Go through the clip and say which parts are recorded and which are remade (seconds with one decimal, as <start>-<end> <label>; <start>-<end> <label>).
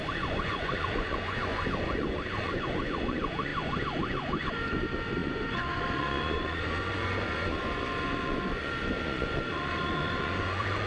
0.0-10.9 remade